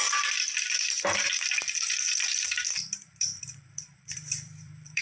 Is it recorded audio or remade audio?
remade